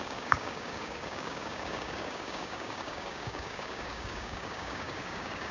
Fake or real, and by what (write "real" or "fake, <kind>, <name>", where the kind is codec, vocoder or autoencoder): fake, codec, DAC